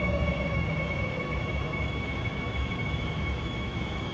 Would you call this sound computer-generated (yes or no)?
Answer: yes